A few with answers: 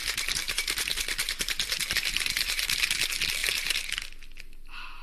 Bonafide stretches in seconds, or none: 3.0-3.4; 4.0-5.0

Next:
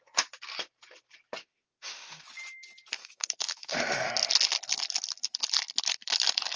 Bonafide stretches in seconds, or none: 0.0-1.4; 2.2-3.0; 4.1-6.6

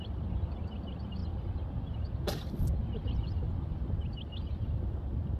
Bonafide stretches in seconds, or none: 0.0-5.4

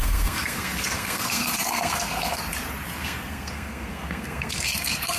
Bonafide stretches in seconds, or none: 2.4-3.0